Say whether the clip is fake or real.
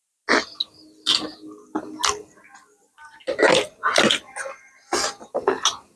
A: real